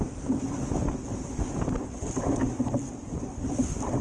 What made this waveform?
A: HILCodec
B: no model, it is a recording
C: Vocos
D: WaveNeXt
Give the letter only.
B